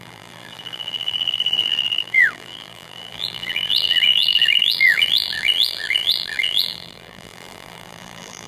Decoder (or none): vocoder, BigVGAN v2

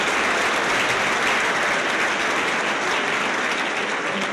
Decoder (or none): none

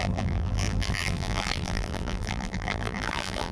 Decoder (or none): vocoder, BigVGAN v2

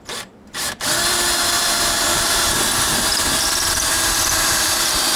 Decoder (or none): vocoder, BigVGAN v2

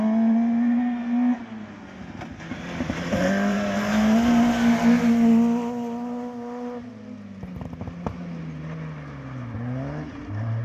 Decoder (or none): none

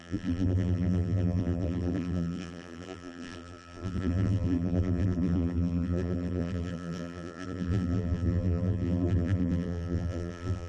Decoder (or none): vocoder, BigVGAN v2